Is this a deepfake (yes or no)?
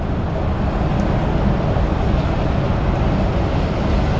no